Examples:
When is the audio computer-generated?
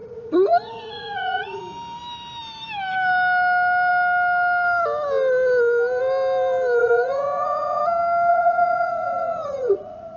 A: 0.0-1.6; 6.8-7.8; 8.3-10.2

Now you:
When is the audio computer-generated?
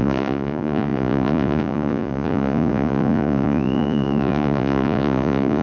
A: 0.0-5.6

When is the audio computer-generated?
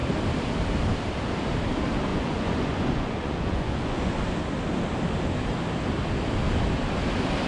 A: 2.1-4.1